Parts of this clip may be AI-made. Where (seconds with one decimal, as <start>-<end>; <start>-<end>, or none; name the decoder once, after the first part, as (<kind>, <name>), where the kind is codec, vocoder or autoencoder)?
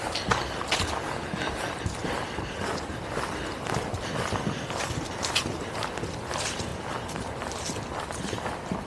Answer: none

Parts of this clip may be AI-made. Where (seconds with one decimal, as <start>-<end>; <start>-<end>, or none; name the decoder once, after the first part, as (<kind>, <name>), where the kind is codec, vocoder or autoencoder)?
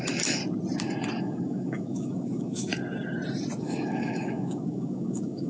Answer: 0.0-0.4 (autoencoder, DAC-VAE); 1.2-2.7; 3.6-5.5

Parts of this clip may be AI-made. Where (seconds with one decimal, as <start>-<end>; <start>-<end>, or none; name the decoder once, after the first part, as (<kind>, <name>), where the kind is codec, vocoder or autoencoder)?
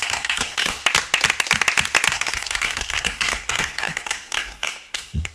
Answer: 0.0-0.8 (codec, SNAC); 2.1-5.3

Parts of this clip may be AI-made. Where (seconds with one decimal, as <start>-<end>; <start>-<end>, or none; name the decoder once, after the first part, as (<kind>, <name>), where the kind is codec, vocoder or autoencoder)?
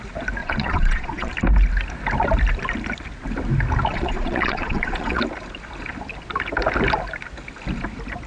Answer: 0.4-1.3 (vocoder, Vocos); 3.9-5.2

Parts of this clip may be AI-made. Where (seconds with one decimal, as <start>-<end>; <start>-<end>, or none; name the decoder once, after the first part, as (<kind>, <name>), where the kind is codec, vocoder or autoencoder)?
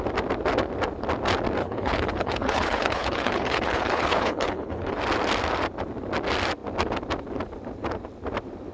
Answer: 1.6-5.0 (codec, HILCodec)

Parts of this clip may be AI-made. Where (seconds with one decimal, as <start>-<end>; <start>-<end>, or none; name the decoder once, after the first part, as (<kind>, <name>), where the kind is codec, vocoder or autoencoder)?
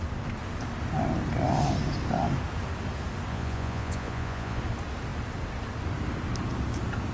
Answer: 3.3-4.6 (vocoder, Vocos)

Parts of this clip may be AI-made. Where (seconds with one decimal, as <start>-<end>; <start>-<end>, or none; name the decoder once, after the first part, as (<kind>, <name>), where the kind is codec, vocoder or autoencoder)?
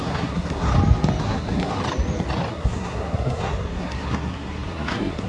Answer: 0.0-0.7 (codec, SNAC); 1.2-1.8; 2.5-5.3